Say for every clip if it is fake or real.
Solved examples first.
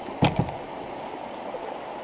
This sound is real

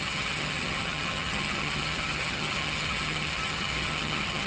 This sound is fake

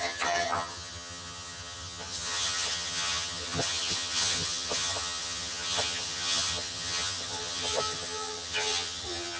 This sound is fake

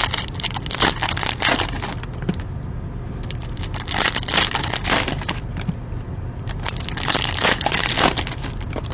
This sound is real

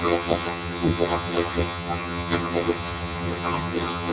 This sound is fake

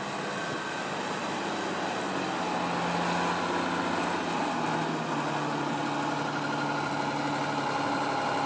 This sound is real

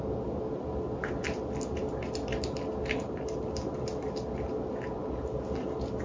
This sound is real